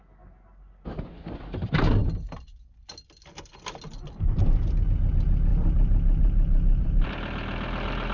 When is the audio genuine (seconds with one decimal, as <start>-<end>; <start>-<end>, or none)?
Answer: 0.0-5.5; 7.1-8.1